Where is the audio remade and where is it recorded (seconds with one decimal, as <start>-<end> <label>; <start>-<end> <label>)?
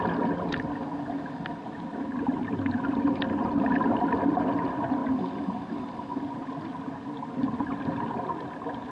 0.0-8.9 recorded